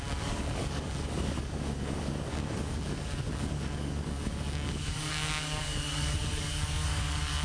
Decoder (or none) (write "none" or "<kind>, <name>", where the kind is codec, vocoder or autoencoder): codec, DAC